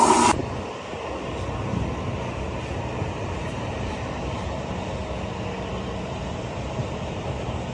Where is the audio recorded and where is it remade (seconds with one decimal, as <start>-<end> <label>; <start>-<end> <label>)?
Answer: 0.0-0.4 remade; 0.4-3.2 recorded; 3.2-5.0 remade; 5.0-6.1 recorded; 6.1-7.7 remade